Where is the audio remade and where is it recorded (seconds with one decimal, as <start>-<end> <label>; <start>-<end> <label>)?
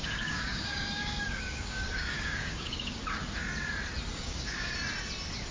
0.0-3.0 remade; 3.0-4.1 recorded; 4.1-4.7 remade; 4.7-5.5 recorded